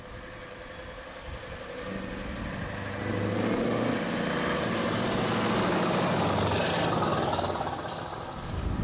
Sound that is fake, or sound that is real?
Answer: real